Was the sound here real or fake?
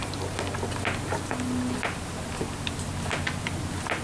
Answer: real